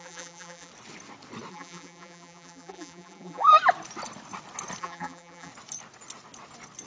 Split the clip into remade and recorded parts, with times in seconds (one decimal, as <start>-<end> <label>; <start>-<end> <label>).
0.0-0.7 remade; 0.7-1.5 recorded; 1.5-3.5 remade; 3.5-4.8 recorded; 4.8-5.5 remade; 5.5-6.9 recorded